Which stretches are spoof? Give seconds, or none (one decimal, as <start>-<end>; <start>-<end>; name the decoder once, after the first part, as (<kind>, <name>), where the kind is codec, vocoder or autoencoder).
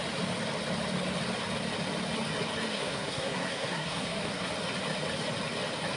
2.7-4.5 (codec, SNAC)